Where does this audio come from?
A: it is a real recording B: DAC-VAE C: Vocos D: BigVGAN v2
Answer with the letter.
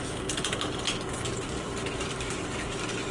A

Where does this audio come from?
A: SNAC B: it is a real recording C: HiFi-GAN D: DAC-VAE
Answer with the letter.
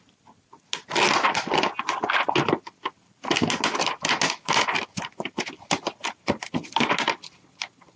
B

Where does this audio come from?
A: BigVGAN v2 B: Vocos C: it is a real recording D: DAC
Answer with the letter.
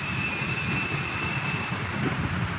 A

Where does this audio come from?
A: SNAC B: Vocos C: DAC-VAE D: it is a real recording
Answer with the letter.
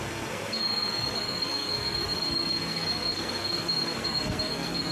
A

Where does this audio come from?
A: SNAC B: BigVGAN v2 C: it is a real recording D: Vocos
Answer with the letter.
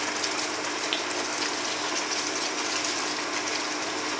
C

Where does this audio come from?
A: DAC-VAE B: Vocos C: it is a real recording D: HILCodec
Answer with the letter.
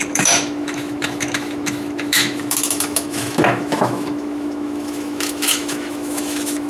A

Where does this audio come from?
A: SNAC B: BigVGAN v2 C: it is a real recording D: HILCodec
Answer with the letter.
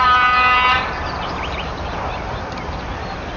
B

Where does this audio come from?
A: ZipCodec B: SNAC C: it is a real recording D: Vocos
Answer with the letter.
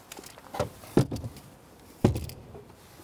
C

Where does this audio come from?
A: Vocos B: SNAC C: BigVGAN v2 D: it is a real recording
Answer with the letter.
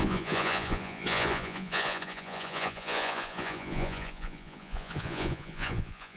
A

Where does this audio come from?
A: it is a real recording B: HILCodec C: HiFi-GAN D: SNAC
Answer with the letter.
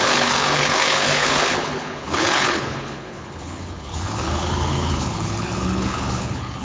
B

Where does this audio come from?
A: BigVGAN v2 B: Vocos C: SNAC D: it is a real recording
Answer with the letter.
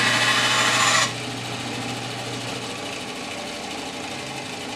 D